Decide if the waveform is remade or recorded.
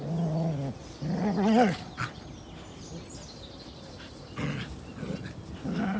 recorded